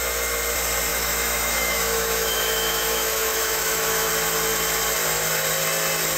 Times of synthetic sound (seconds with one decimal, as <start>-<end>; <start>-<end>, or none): 0.9-4.1